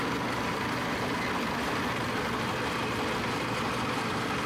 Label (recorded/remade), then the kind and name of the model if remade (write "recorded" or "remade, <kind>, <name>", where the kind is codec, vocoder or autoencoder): recorded